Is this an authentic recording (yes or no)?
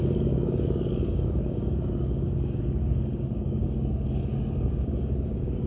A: no